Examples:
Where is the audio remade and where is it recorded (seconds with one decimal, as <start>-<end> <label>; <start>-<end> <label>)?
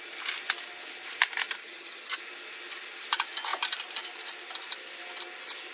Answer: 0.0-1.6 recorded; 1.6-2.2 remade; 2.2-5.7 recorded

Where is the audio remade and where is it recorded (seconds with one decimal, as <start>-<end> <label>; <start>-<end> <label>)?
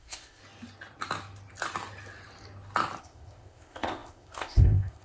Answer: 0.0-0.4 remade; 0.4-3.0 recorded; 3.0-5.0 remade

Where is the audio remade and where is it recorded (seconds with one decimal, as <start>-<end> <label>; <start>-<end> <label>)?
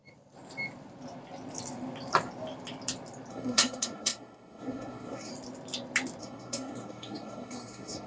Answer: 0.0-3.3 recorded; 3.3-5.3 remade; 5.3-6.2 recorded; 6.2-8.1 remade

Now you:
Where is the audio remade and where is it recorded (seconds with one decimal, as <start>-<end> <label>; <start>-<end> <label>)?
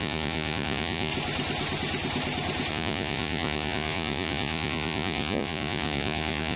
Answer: 0.0-1.1 remade; 1.1-2.7 recorded; 2.7-6.6 remade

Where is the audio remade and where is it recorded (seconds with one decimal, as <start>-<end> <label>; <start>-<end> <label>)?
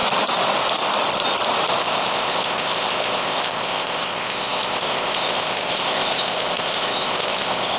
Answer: 0.0-1.8 recorded; 1.8-7.8 remade